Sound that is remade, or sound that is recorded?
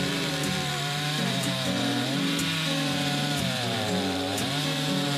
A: remade